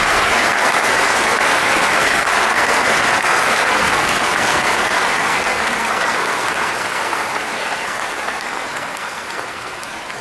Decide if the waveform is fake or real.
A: fake